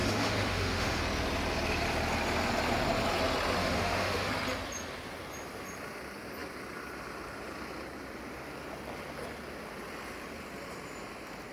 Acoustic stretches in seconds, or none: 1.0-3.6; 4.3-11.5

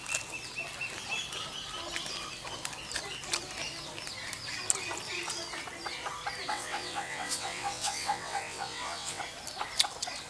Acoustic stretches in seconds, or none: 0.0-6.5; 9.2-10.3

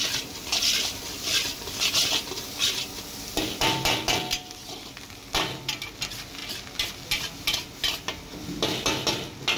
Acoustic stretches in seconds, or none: 0.0-9.6